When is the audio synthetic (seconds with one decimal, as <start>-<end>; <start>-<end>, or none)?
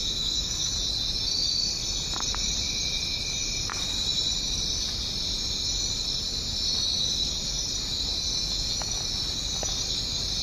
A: 0.0-0.7